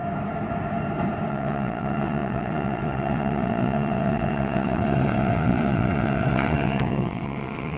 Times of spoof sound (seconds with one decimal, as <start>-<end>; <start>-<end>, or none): 1.3-7.8